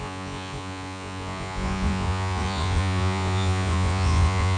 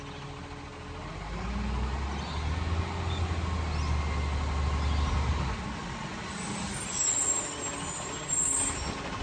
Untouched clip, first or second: second